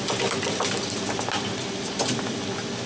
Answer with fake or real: real